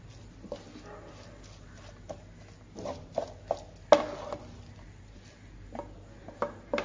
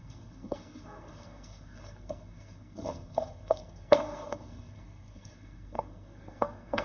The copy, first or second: second